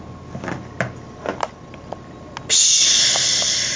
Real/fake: real